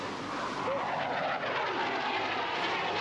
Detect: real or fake real